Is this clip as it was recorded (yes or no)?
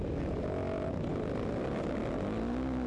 yes